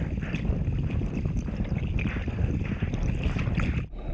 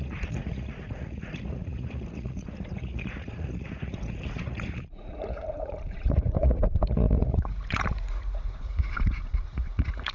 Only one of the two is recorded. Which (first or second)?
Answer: first